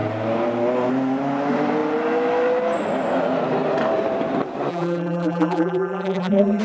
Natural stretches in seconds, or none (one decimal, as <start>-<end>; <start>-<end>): 0.0-4.7